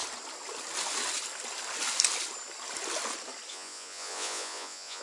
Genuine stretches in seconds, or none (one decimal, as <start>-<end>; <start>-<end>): 0.0-3.5